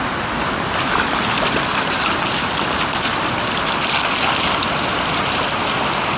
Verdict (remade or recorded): recorded